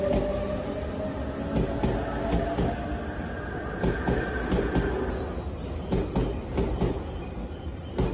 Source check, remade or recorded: recorded